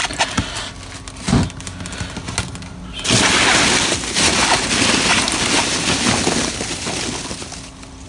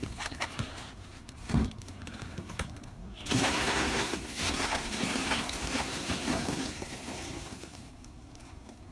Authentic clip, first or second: first